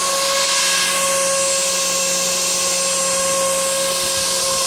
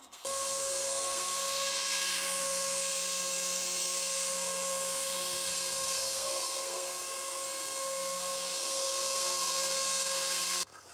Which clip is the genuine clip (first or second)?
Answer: first